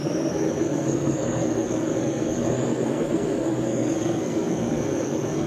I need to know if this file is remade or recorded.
remade